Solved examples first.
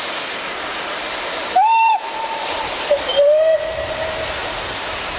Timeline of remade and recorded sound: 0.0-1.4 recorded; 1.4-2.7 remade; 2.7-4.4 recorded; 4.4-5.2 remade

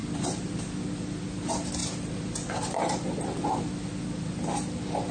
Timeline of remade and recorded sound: 0.0-5.1 recorded